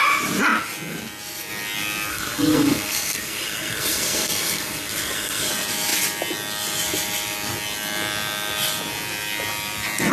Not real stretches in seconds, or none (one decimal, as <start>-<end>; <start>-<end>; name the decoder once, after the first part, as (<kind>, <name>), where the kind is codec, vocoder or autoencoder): 2.1-5.5 (codec, SNAC)